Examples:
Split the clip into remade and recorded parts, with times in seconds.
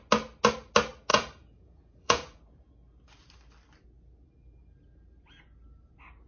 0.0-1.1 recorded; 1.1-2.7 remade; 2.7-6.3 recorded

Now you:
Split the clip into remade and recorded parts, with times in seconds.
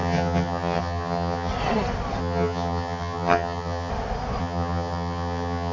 0.0-1.5 remade; 1.5-2.2 recorded; 2.2-3.9 remade; 3.9-4.4 recorded; 4.4-5.7 remade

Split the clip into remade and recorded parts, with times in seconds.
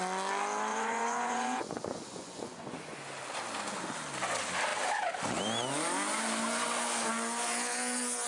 0.0-0.7 recorded; 0.7-3.0 remade; 3.0-8.3 recorded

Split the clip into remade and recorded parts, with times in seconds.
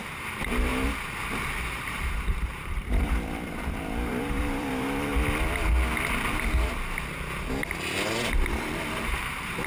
0.0-0.7 remade; 0.7-1.6 recorded; 1.6-5.1 remade; 5.1-8.5 recorded; 8.5-9.7 remade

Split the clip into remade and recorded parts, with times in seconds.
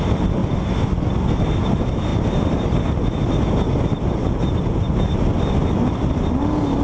0.0-6.8 recorded